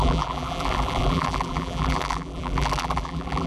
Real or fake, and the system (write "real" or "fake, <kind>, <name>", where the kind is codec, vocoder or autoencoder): fake, vocoder, BigVGAN v2